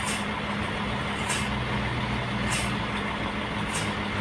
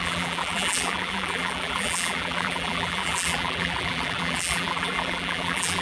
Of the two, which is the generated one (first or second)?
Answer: second